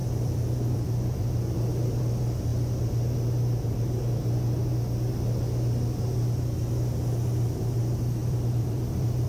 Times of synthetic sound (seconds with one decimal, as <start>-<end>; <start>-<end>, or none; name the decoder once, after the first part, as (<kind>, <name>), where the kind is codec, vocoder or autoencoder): 0.0-2.0 (vocoder, BigVGAN v2); 8.2-9.3